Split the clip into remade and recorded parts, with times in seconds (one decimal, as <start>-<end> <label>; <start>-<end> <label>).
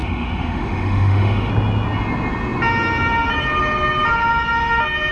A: 0.0-1.5 remade; 1.5-5.1 recorded